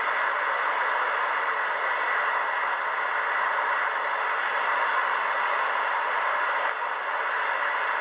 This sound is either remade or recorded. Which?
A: recorded